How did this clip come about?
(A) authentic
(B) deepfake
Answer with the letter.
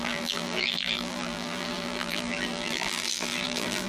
B